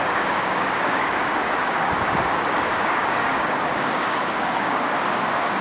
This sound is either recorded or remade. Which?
remade